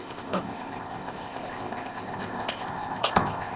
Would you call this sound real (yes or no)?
no